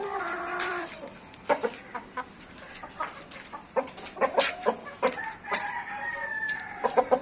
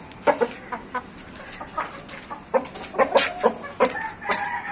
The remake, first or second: first